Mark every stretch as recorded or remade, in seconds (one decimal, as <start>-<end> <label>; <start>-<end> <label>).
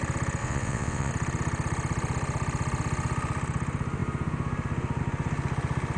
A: 0.0-0.4 recorded; 0.4-1.1 remade; 1.1-6.0 recorded